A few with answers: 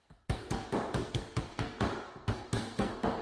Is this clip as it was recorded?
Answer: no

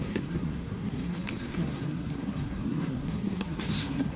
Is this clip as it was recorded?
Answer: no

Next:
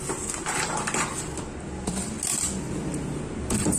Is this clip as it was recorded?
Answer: yes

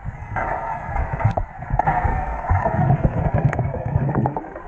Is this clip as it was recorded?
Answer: no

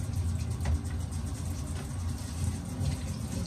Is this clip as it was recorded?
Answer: yes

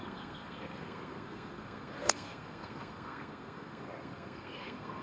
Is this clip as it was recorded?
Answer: no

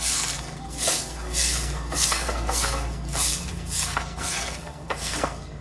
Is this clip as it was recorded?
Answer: no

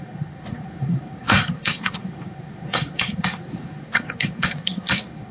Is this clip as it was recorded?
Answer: no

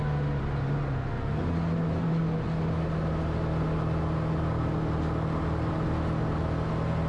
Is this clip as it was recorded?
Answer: yes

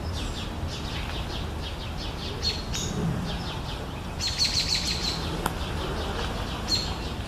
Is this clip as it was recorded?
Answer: yes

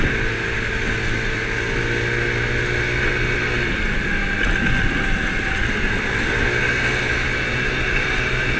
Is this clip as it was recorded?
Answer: yes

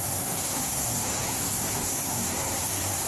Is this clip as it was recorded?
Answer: no